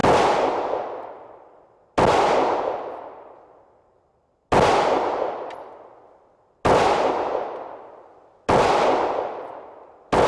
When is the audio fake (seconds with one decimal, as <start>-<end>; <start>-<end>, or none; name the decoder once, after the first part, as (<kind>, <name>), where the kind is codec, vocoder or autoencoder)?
none